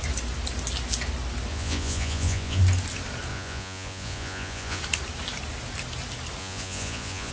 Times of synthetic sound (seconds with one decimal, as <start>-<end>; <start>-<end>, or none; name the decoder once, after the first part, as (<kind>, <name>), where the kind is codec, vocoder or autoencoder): 1.5-2.6 (vocoder, Vocos); 3.3-4.8; 6.4-7.3